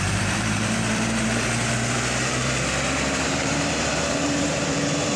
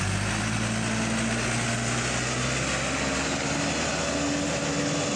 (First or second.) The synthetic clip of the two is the first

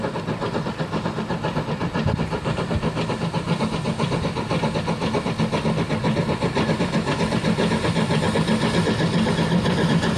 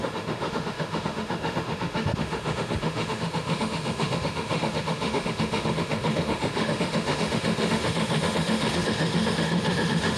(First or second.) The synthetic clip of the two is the second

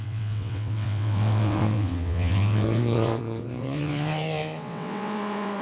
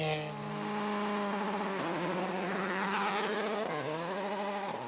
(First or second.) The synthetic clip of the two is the first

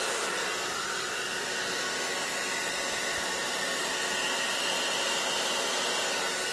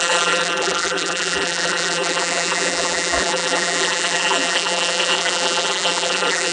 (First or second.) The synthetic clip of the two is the second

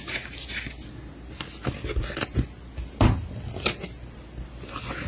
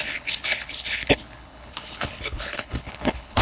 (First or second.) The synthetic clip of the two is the second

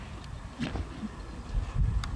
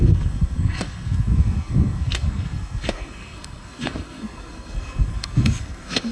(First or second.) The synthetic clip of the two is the second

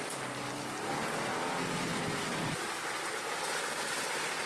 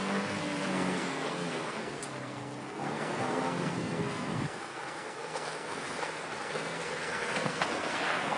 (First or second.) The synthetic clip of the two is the second